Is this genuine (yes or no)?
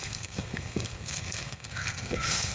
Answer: no